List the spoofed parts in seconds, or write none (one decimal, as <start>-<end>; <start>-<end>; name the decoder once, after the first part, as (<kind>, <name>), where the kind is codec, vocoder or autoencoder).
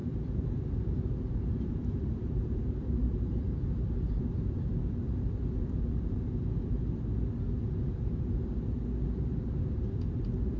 0.0-3.5 (vocoder, BigVGAN v2)